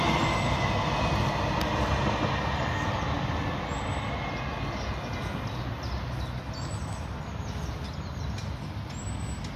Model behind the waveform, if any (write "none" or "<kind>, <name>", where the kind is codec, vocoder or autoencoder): none